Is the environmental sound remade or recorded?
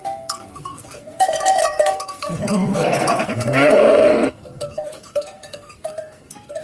remade